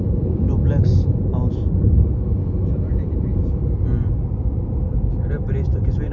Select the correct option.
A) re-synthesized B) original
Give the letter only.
A